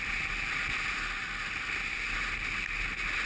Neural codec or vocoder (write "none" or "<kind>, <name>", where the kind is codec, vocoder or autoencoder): none